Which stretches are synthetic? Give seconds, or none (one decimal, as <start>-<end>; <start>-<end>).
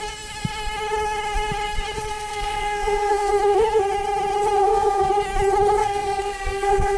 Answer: 2.1-3.3; 4.6-5.1; 5.8-7.0